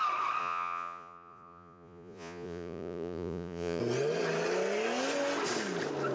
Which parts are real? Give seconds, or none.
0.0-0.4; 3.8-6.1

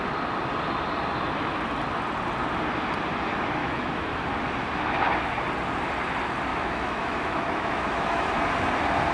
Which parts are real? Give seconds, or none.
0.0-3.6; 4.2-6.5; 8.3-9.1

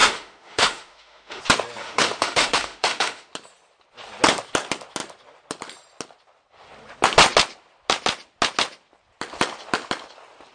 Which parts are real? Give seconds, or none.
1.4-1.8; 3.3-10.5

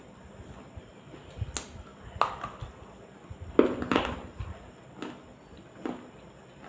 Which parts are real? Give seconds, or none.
0.0-6.7

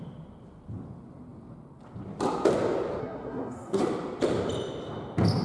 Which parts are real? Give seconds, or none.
0.0-3.0; 3.8-5.4